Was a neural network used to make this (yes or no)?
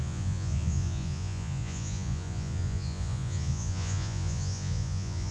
yes